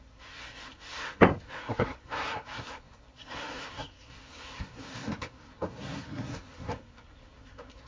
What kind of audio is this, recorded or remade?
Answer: remade